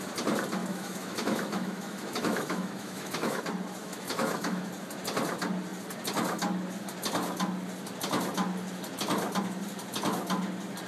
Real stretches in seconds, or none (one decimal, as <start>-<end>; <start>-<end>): 0.0-0.6; 3.4-3.8; 4.7-10.9